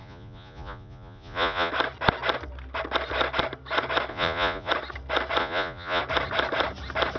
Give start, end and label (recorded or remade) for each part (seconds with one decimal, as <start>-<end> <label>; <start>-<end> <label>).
0.0-1.7 remade; 1.7-4.1 recorded; 4.1-4.7 remade; 4.7-5.4 recorded; 5.4-6.0 remade; 6.0-7.2 recorded